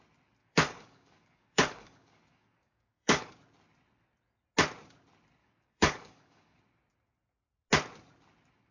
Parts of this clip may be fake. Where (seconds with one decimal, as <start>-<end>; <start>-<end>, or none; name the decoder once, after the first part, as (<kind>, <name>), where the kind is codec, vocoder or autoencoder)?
0.4-3.3 (codec, DAC); 5.4-6.6